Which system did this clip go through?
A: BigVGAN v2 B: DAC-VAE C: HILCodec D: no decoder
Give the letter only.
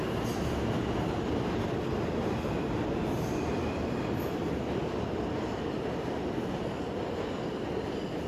D